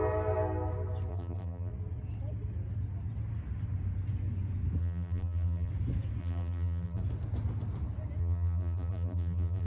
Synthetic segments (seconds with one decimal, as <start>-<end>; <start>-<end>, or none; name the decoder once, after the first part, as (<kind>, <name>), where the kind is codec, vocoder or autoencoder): 1.1-1.7 (vocoder, BigVGAN v2); 4.8-5.7; 6.2-7.0; 8.2-9.7